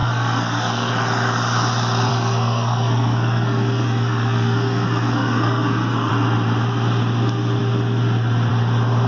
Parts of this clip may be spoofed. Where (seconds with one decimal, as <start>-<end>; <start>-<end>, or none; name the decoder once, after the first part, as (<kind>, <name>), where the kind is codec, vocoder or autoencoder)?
0.0-0.9 (codec, SNAC); 2.1-6.1